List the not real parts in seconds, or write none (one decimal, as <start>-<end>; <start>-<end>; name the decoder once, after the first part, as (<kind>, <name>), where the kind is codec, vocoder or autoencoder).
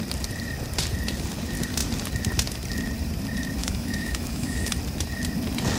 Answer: 3.6-4.7 (autoencoder, DAC-VAE)